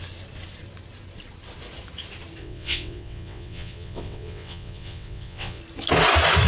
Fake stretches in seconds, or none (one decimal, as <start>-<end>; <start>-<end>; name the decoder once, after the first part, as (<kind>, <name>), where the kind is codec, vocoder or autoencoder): 2.4-5.6 (vocoder, WaveNeXt)